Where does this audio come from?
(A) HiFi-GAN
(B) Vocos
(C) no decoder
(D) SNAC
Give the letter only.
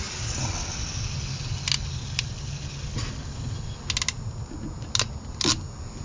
C